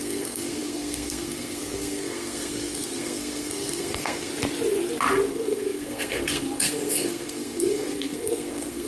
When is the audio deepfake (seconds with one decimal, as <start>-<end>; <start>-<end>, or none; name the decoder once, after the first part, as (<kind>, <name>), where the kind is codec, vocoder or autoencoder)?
0.0-4.3 (codec, SNAC); 5.3-8.9